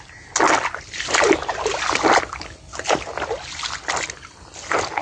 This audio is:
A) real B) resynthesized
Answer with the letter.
A